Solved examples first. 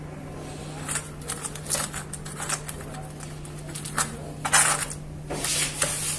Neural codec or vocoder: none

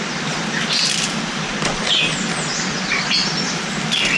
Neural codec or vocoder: none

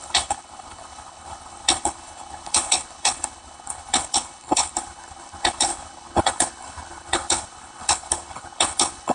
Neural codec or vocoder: codec, HILCodec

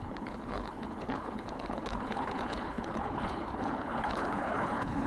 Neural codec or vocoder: codec, HILCodec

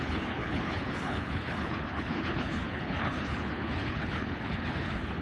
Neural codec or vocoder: codec, HILCodec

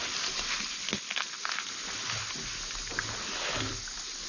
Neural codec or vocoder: none